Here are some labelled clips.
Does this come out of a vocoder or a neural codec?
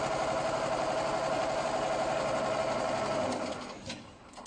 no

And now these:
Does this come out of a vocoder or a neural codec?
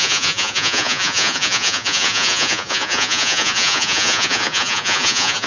yes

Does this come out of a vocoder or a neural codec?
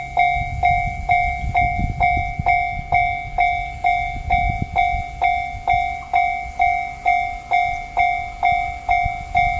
no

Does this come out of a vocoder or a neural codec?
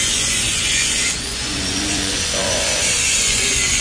yes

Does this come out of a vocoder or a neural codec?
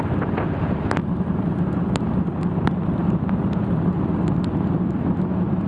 no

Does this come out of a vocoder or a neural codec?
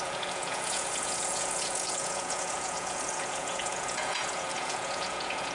yes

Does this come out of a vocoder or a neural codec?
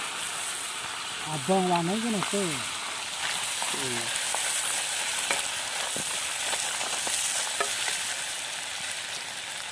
no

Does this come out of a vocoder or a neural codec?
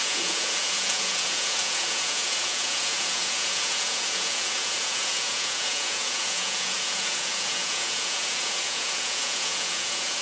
yes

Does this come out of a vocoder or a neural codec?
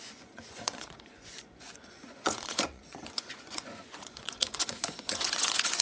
yes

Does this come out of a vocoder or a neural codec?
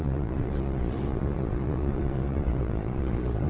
yes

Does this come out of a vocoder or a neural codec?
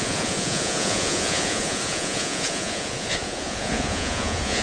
yes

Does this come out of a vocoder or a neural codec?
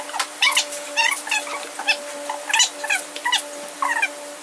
no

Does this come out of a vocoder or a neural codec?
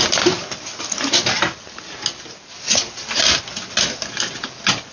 no